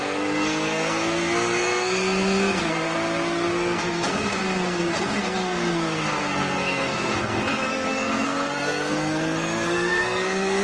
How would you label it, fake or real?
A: fake